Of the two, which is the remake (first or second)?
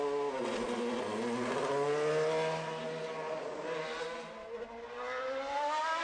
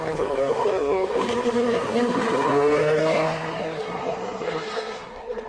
second